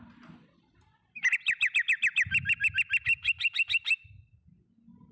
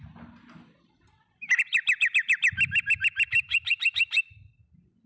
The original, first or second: first